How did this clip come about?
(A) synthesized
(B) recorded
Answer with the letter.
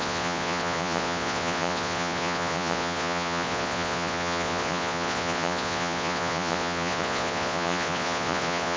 A